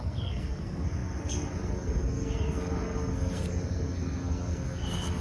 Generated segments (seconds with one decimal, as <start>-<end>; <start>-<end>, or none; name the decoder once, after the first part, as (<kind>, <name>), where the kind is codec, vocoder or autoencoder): 0.0-5.2 (codec, SNAC)